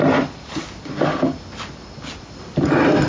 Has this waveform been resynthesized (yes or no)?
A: no